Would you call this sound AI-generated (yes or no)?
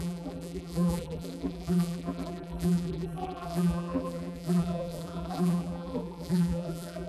yes